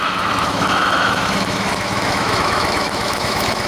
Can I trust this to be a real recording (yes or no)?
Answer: no